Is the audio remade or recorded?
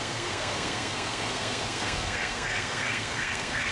remade